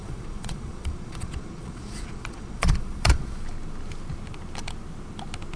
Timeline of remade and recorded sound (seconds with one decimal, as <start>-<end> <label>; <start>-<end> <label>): 0.0-3.4 remade; 3.4-5.6 recorded